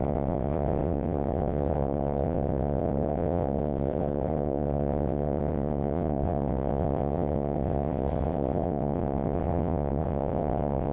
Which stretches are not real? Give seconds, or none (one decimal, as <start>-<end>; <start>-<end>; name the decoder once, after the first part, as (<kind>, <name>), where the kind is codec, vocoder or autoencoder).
0.0-10.9 (vocoder, WaveNeXt)